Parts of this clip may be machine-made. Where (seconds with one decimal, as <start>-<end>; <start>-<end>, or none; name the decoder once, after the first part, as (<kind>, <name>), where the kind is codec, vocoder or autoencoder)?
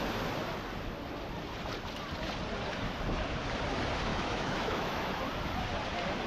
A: 4.1-5.2 (autoencoder, DAC-VAE)